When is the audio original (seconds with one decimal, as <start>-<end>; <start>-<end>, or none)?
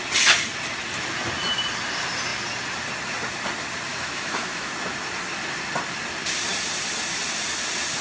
0.0-3.9; 4.7-8.0